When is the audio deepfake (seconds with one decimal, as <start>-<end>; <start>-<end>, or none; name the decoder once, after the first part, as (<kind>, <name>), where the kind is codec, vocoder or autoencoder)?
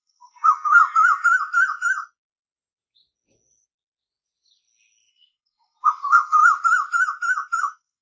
0.0-0.8 (codec, SNAC); 5.1-6.4; 7.6-8.0